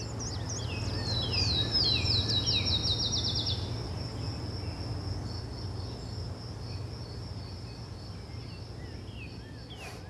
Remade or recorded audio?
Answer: recorded